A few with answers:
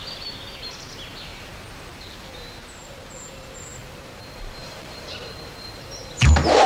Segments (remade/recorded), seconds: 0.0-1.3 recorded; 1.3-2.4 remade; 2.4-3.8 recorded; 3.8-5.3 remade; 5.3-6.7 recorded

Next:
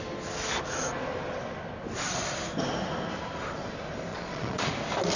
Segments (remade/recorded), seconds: 0.0-4.1 recorded; 4.1-4.7 remade; 4.7-5.2 recorded

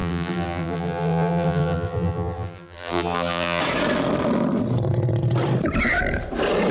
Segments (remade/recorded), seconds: 0.0-3.6 remade; 3.6-6.7 recorded

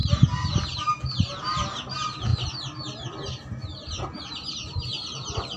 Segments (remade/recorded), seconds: 0.0-5.6 recorded

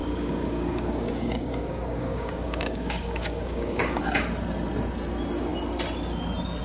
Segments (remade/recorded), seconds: 0.0-4.0 remade; 4.0-6.6 recorded